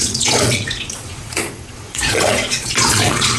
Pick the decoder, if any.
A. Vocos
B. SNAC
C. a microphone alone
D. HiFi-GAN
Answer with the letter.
A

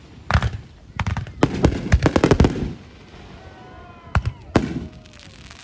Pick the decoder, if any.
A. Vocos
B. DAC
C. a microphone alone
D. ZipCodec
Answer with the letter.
C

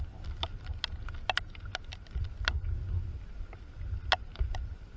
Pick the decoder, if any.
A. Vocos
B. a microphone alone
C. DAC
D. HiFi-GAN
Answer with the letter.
B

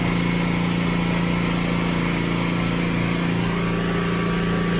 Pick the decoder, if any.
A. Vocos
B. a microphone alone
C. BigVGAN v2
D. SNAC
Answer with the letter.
B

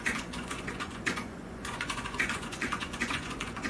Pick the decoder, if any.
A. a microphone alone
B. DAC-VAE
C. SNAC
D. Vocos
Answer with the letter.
D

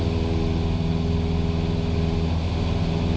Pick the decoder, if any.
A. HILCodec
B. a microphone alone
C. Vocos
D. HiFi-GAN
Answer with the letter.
B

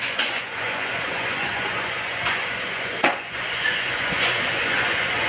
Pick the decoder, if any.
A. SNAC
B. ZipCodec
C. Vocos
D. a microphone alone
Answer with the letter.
C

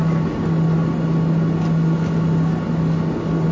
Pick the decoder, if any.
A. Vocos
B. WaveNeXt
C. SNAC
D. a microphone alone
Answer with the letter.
D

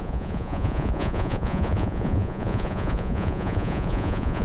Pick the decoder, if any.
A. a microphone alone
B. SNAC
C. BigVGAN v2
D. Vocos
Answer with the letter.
D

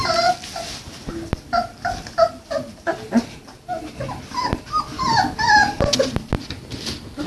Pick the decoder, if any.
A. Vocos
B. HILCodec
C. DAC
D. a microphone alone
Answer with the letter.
D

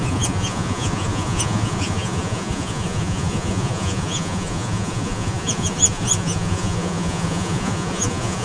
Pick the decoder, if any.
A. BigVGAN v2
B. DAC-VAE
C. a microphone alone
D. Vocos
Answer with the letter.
D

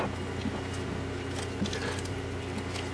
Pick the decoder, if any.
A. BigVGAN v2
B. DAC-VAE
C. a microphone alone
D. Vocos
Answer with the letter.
C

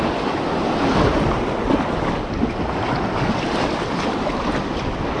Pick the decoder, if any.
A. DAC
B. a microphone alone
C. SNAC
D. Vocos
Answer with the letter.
B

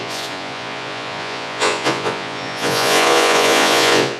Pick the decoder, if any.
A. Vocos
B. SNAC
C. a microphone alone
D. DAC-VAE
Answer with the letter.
A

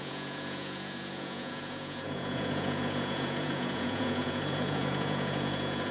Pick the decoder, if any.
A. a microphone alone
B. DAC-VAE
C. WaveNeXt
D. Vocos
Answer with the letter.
D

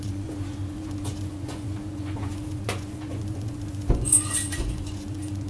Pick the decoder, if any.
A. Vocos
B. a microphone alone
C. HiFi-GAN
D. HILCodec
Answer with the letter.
A